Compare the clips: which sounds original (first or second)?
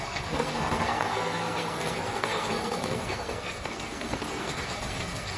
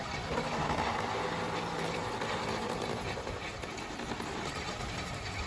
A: second